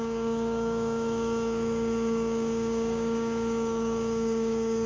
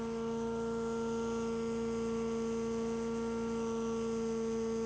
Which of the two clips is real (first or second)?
second